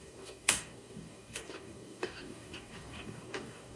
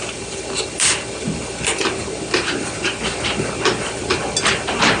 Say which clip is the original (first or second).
second